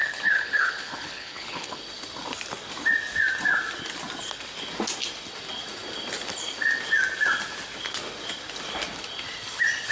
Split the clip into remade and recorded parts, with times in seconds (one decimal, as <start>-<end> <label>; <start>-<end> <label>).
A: 0.0-1.8 remade; 1.8-9.9 recorded